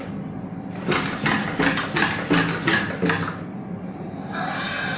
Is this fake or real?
real